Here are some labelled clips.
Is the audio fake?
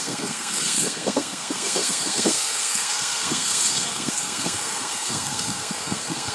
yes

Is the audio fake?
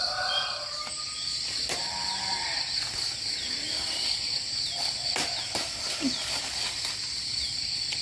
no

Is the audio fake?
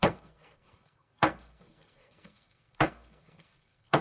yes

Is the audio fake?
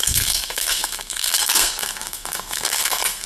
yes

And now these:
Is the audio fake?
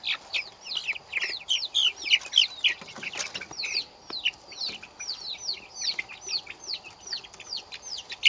no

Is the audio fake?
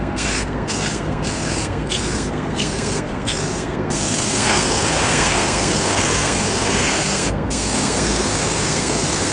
yes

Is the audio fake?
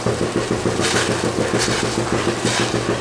no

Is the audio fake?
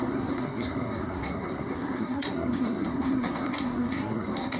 yes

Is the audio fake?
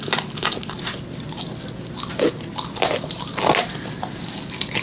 no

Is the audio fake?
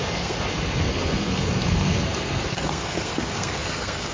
yes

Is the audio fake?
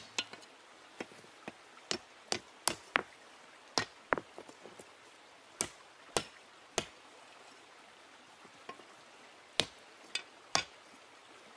no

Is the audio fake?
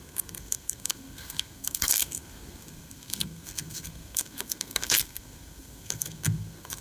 yes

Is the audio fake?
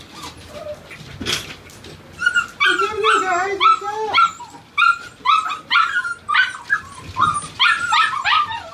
no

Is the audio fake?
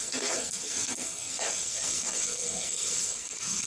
yes